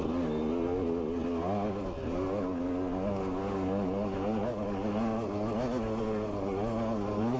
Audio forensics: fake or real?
real